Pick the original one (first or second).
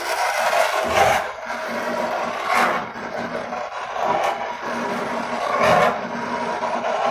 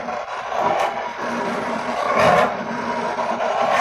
first